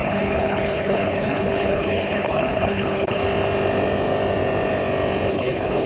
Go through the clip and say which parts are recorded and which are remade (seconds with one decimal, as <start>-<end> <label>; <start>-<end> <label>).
0.0-3.2 remade; 3.2-5.3 recorded; 5.3-5.9 remade